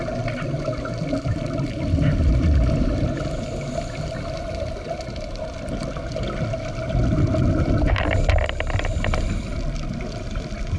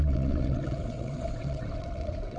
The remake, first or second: second